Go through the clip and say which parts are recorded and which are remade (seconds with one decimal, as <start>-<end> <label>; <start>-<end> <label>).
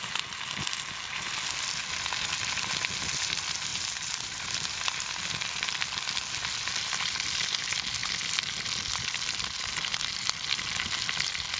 0.0-3.7 recorded; 3.7-5.1 remade; 5.1-11.6 recorded